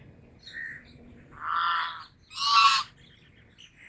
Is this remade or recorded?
recorded